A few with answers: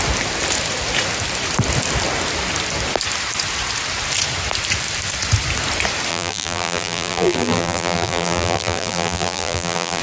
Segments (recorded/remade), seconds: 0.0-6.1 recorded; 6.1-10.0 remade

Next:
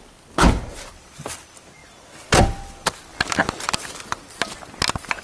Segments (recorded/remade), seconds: 0.0-5.2 recorded

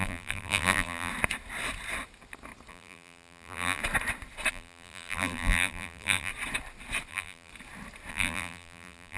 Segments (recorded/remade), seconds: 0.0-1.1 remade; 1.1-2.7 recorded; 2.7-3.8 remade; 3.8-4.5 recorded; 4.5-6.3 remade; 6.3-7.1 recorded; 7.1-7.5 remade; 7.5-8.1 recorded; 8.1-9.2 remade

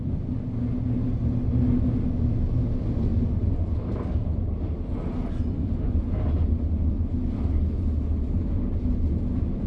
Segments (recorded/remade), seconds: 0.0-9.7 recorded

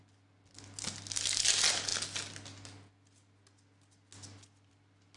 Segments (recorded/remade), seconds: 0.0-5.2 recorded

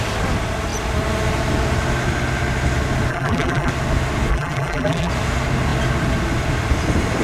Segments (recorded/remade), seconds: 0.0-3.1 recorded; 3.1-3.7 remade; 3.7-4.3 recorded; 4.3-5.1 remade; 5.1-7.2 recorded